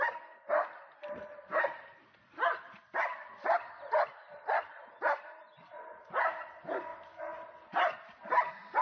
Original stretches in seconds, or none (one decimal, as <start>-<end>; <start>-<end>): 6.9-8.8